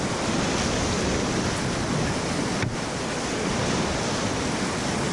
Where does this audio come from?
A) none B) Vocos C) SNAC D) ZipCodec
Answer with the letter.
A